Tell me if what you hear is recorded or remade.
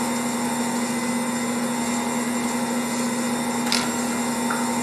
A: recorded